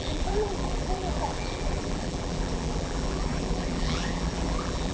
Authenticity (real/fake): fake